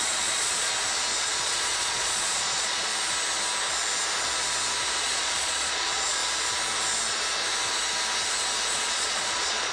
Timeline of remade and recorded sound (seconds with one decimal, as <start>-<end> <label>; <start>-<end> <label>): 0.0-0.7 remade; 0.7-1.2 recorded; 1.2-2.9 remade; 2.9-5.0 recorded; 5.0-6.2 remade; 6.2-8.7 recorded; 8.7-9.7 remade